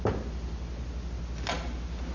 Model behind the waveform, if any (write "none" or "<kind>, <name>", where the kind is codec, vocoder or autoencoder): none